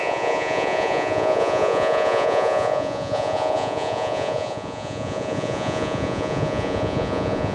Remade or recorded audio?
remade